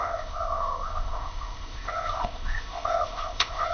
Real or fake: fake